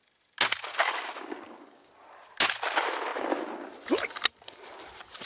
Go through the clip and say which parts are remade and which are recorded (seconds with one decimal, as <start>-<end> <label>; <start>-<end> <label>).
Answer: 0.0-0.7 recorded; 0.7-1.9 remade; 1.9-5.3 recorded